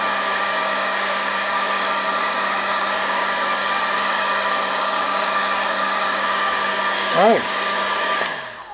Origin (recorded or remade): remade